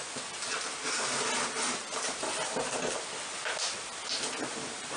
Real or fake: real